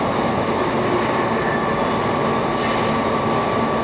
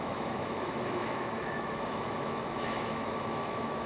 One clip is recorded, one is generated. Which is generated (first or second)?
second